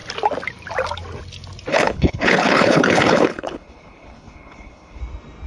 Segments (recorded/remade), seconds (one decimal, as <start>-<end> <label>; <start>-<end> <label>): 0.0-1.7 recorded; 1.7-5.0 remade; 5.0-5.5 recorded